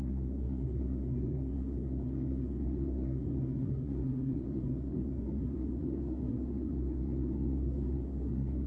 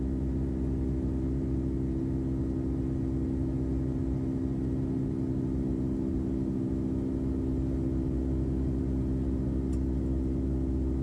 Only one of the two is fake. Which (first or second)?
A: first